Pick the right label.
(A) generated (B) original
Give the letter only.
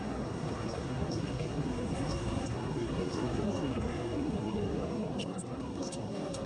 A